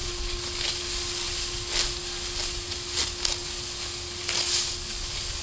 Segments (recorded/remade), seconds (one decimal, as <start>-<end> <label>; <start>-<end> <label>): 0.0-5.4 recorded